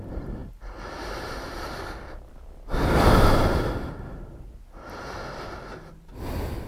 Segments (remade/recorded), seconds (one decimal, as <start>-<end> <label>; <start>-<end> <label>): 0.0-6.7 recorded